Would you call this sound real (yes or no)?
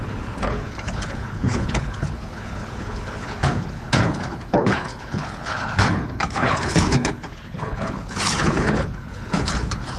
no